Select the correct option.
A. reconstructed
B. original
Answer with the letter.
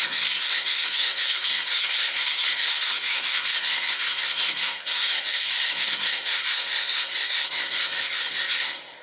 A